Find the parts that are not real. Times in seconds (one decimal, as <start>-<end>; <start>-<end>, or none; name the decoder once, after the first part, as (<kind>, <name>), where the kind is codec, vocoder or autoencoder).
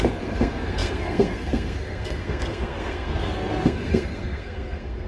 0.0-5.1 (codec, SNAC)